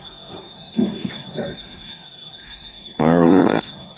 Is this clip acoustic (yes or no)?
no